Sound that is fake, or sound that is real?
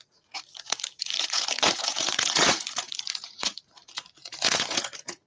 fake